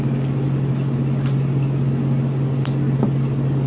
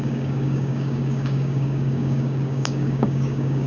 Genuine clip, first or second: first